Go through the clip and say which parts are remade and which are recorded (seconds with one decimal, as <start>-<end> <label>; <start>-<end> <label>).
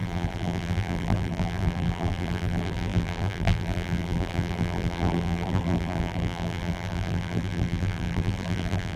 0.0-9.0 remade